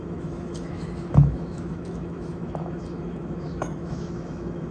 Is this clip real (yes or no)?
no